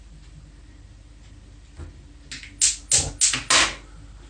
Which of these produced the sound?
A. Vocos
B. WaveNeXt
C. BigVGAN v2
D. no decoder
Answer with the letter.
D